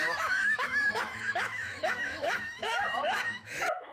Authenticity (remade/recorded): remade